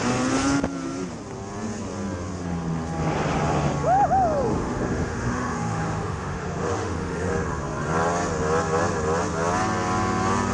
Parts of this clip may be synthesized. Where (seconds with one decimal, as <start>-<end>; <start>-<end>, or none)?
4.5-7.3